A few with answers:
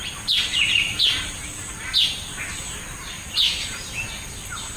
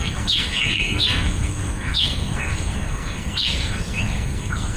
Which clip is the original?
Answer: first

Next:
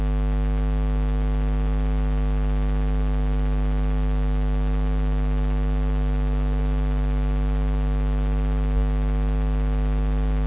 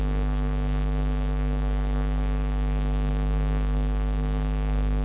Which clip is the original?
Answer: first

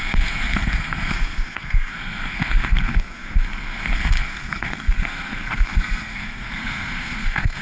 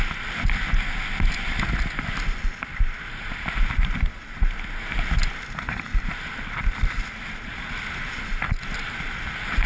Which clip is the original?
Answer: second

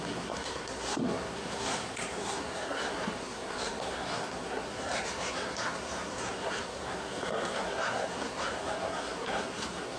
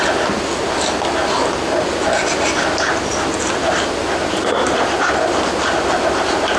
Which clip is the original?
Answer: second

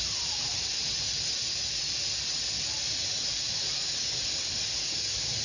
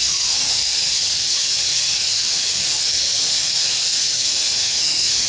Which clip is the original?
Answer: first